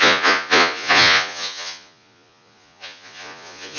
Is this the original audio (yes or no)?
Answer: no